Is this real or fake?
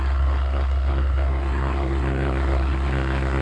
fake